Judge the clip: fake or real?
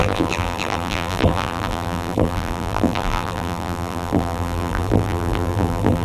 fake